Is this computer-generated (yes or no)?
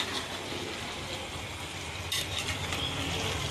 no